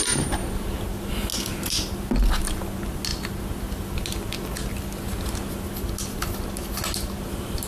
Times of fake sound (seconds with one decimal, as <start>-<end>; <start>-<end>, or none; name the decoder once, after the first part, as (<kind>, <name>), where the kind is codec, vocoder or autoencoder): none